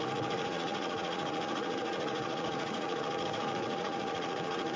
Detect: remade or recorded remade